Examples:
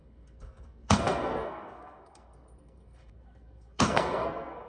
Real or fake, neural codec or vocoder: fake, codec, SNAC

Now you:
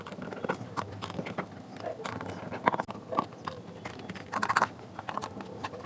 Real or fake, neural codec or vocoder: real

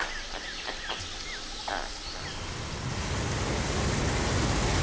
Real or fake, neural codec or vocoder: real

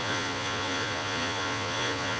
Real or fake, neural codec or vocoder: fake, vocoder, Vocos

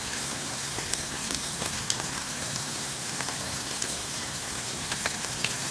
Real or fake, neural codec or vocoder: fake, codec, SNAC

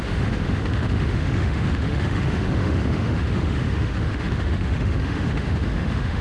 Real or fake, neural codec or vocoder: fake, autoencoder, DAC-VAE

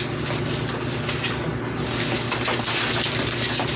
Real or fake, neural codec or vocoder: real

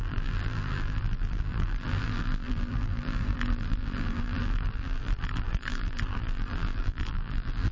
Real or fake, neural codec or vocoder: fake, vocoder, BigVGAN v2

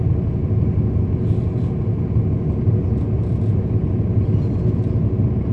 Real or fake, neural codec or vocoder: real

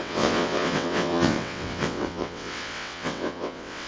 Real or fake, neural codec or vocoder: fake, vocoder, WaveNeXt